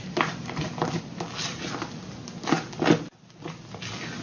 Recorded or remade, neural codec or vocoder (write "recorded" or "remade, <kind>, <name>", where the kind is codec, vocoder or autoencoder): recorded